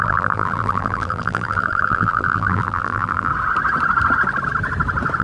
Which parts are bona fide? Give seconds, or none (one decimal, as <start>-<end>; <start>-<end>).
3.3-5.2